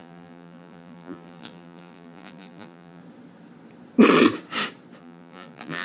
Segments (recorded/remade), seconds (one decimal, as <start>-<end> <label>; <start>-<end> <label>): 0.0-3.0 remade; 3.0-5.0 recorded; 5.0-5.8 remade